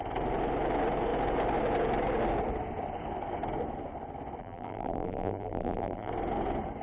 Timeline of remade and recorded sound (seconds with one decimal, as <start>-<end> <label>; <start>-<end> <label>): 0.0-4.4 recorded; 4.4-6.1 remade; 6.1-6.8 recorded

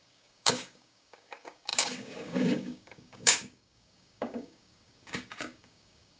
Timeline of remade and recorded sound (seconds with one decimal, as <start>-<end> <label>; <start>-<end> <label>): 0.0-6.2 remade

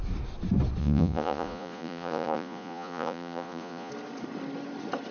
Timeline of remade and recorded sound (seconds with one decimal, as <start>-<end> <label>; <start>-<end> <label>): 0.0-0.8 recorded; 0.8-3.9 remade; 3.9-5.1 recorded

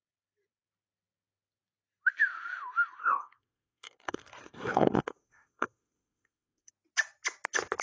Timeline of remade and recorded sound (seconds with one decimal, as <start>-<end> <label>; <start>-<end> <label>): 0.0-3.0 recorded; 3.0-6.7 remade; 6.7-7.8 recorded

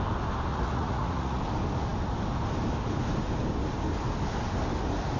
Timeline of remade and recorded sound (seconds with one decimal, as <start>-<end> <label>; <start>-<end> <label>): 0.0-0.5 recorded; 0.5-1.4 remade; 1.4-5.2 recorded

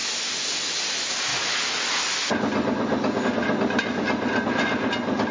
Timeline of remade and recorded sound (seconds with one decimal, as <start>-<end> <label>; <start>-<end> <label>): 0.0-5.3 recorded

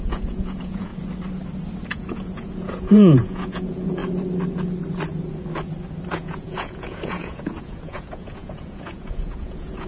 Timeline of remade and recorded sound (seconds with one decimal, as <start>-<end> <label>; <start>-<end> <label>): 0.0-0.9 remade; 0.9-1.9 recorded; 1.9-4.0 remade; 4.0-6.1 recorded; 6.1-9.9 remade

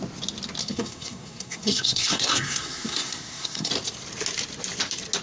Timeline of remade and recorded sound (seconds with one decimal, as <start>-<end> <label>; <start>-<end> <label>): 0.0-0.6 recorded; 0.6-3.7 remade; 3.7-5.2 recorded